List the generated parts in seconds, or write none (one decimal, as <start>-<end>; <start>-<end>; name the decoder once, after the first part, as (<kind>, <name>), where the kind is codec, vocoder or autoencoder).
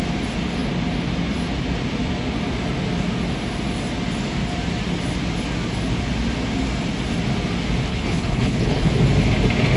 7.9-8.9 (codec, HILCodec)